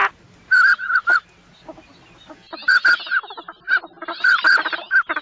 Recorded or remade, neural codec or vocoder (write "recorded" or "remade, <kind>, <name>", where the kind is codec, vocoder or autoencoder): recorded